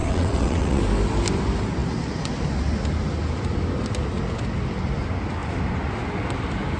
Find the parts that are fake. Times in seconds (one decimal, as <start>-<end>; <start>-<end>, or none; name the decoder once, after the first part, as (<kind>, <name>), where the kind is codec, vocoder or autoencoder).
0.0-0.8 (vocoder, WaveNeXt)